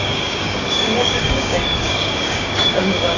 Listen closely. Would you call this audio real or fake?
fake